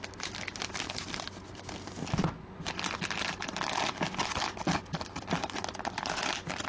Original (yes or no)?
yes